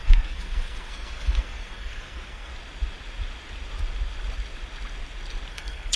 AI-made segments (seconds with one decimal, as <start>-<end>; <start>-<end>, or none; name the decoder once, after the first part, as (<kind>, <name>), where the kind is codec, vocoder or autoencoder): 0.0-2.5 (codec, SNAC); 5.5-6.0